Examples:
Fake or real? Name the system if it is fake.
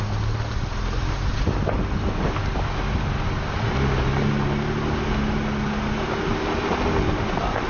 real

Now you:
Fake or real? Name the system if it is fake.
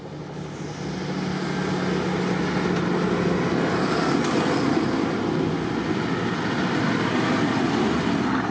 real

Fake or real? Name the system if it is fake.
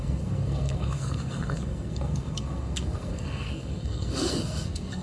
fake, codec, SNAC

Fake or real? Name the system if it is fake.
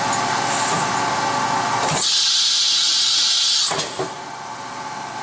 real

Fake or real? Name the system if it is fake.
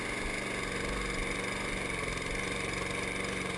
real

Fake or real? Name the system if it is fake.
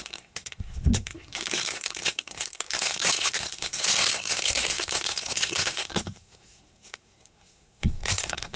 fake, codec, SNAC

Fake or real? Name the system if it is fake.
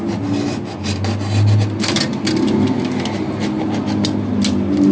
real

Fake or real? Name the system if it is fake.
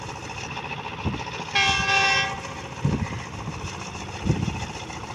real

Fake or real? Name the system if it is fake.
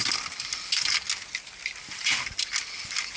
real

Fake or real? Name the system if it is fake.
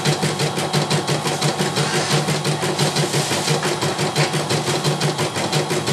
real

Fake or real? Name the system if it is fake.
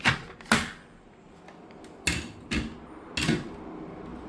real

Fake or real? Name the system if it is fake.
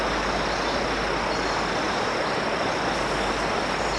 real